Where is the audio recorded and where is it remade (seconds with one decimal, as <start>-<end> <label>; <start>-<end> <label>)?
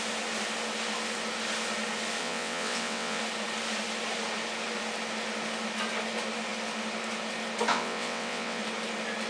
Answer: 0.0-2.2 recorded; 2.2-3.2 remade; 3.2-7.7 recorded; 7.7-8.6 remade; 8.6-9.3 recorded